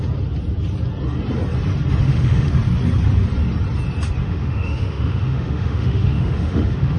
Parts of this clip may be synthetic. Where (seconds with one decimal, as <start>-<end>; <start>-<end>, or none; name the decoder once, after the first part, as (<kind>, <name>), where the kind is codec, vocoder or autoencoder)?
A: 2.0-2.5 (autoencoder, DAC-VAE); 4.2-7.0